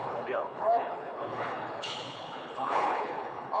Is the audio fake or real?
fake